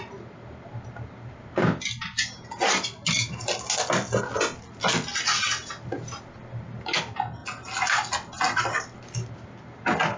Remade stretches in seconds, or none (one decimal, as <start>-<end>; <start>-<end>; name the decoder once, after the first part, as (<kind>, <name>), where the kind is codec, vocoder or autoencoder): none